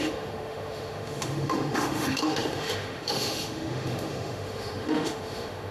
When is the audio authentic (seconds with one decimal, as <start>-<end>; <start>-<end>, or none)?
none